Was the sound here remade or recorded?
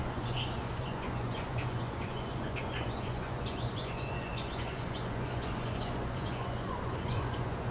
remade